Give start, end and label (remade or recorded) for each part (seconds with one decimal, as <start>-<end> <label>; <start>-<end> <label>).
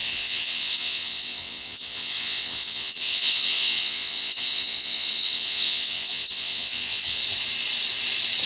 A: 0.0-7.2 remade; 7.2-8.5 recorded